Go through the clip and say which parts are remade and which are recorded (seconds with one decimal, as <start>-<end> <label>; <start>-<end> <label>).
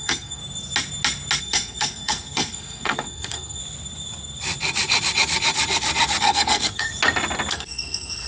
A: 0.0-0.4 remade; 0.4-1.4 recorded; 1.4-3.6 remade; 3.6-6.2 recorded; 6.2-6.9 remade; 6.9-7.5 recorded; 7.5-8.3 remade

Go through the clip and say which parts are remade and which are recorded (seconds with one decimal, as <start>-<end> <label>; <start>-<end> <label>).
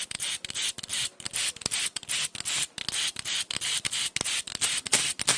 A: 0.0-5.4 recorded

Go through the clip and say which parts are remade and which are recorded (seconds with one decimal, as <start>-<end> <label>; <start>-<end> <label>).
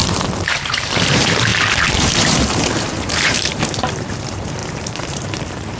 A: 0.0-5.8 remade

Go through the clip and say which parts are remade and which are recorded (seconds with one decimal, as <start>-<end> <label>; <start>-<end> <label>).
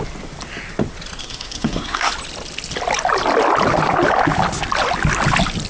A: 0.0-1.2 recorded; 1.2-2.1 remade; 2.1-5.7 recorded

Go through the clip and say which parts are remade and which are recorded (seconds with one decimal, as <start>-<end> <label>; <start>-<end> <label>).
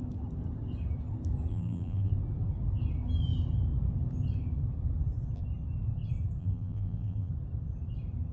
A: 0.0-1.5 recorded; 1.5-2.1 remade; 2.1-6.4 recorded; 6.4-7.3 remade; 7.3-8.3 recorded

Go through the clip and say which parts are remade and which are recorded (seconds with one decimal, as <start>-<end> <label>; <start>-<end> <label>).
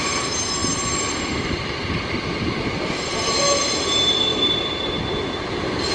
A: 0.0-0.6 recorded; 0.6-3.4 remade; 3.4-5.9 recorded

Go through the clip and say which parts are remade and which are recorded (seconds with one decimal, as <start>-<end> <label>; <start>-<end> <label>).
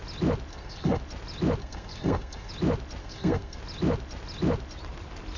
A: 0.0-0.5 recorded; 0.5-1.0 remade; 1.0-1.6 recorded; 1.6-2.5 remade; 2.5-3.0 recorded; 3.0-3.6 remade; 3.6-5.4 recorded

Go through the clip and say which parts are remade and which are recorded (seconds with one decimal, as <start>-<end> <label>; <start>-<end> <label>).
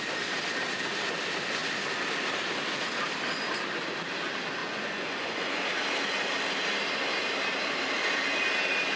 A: 0.0-4.6 recorded; 4.6-5.6 remade; 5.6-9.0 recorded